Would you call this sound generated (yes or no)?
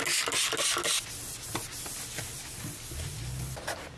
no